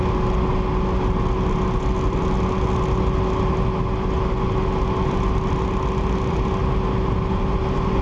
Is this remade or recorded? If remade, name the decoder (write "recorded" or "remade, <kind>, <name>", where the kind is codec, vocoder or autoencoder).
recorded